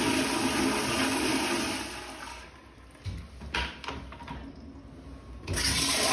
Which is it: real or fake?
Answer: real